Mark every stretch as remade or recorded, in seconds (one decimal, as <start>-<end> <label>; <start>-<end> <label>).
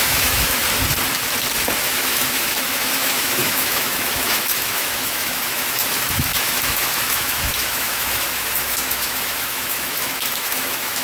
0.0-0.6 remade; 0.6-1.8 recorded; 1.8-11.0 remade